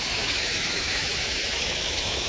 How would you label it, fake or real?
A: fake